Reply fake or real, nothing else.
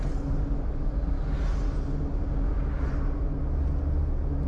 real